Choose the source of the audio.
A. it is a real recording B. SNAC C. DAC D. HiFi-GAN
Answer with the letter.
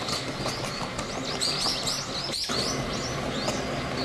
A